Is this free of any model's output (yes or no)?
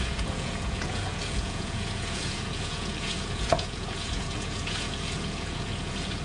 no